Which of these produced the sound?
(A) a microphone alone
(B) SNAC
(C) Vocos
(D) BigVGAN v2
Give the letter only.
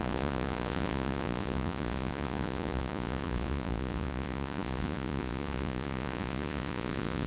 C